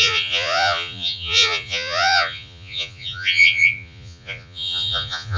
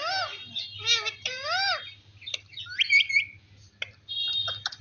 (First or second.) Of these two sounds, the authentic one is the second